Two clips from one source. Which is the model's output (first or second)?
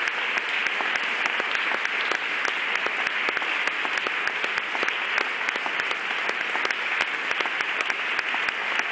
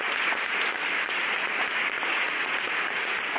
second